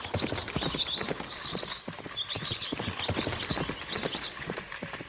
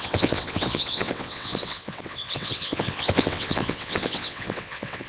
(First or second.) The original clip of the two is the first